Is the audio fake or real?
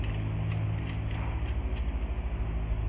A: real